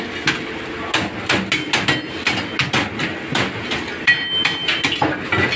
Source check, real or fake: real